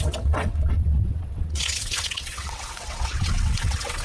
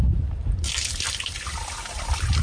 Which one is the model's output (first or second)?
first